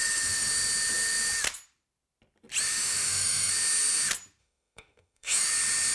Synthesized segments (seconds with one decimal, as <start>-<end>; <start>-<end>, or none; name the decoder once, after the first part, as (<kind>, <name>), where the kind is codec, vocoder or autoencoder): 0.0-0.5 (autoencoder, DAC-VAE); 2.7-3.5; 4.4-5.5